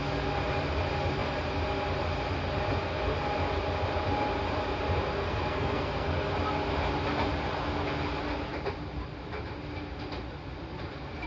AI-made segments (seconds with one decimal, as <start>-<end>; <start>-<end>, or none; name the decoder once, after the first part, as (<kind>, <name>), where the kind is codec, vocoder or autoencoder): 5.2-6.3 (codec, SNAC)